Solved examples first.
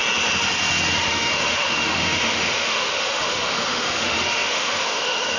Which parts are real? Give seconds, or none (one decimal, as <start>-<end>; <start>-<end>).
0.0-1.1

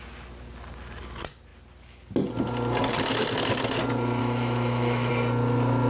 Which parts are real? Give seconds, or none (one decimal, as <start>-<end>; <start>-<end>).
0.0-4.2; 5.1-5.9

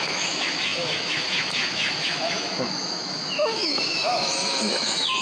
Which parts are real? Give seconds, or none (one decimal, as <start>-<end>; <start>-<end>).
none

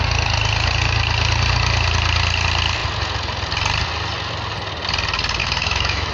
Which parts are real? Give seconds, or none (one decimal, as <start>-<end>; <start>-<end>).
0.0-5.4